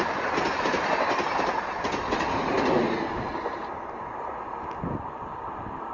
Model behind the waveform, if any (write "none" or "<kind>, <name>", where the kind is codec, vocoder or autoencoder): none